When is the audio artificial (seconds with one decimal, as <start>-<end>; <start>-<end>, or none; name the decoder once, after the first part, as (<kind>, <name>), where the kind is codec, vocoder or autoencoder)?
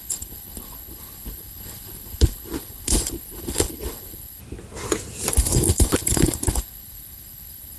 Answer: 0.0-4.4 (codec, HILCodec); 5.3-7.8